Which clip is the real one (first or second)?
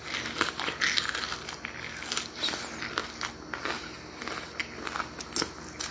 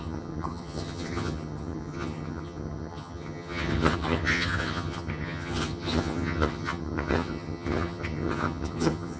first